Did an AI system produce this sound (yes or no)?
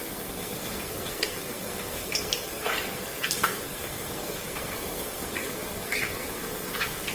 yes